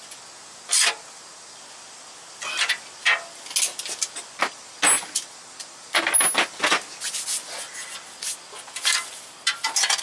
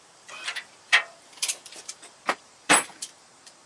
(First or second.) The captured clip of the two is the first